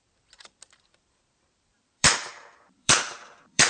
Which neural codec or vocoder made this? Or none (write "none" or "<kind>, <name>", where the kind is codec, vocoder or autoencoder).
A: vocoder, BigVGAN v2